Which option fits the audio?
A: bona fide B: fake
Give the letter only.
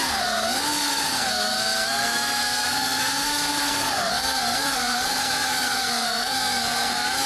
B